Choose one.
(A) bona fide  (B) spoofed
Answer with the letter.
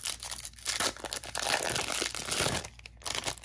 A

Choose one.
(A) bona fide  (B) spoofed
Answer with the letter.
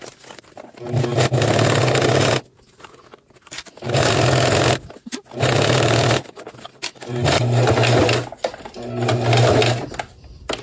A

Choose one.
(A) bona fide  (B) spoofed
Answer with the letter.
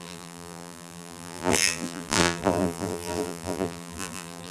B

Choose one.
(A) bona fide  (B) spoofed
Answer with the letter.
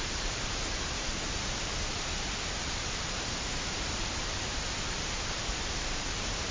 B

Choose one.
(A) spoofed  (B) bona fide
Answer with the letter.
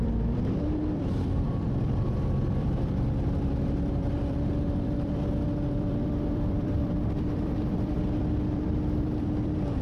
A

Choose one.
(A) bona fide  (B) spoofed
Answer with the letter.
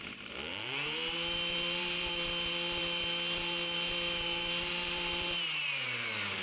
B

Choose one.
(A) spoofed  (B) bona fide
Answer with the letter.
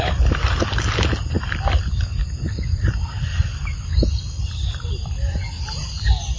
A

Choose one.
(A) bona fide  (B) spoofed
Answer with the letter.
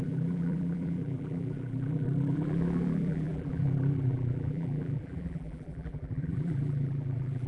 B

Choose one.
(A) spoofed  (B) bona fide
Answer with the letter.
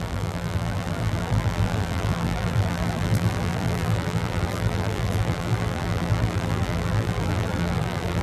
A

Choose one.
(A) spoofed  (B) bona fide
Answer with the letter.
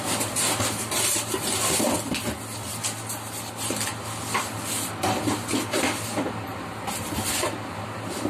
B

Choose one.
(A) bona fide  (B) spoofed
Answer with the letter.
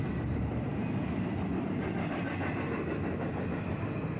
B